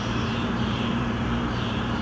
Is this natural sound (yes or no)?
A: no